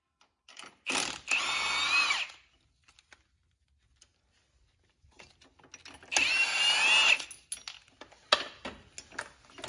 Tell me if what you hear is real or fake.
real